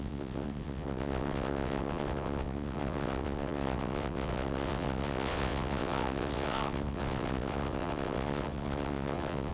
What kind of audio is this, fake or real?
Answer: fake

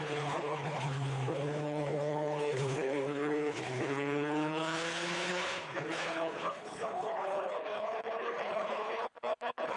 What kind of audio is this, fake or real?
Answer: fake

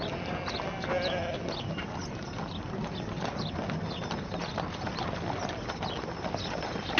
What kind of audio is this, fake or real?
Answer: real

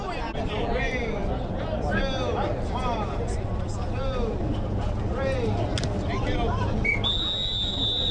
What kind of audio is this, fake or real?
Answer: real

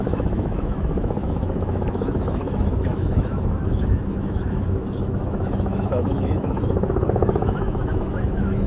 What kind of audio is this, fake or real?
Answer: fake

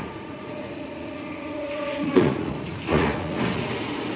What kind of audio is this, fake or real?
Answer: fake